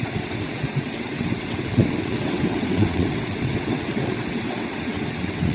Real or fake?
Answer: fake